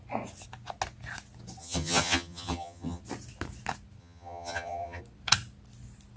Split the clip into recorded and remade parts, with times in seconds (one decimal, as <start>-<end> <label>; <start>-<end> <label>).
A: 0.0-1.6 recorded; 1.6-3.0 remade; 3.0-4.0 recorded; 4.0-5.0 remade; 5.0-6.2 recorded